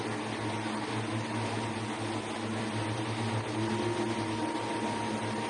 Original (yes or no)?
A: yes